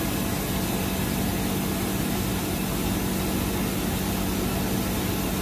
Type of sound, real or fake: real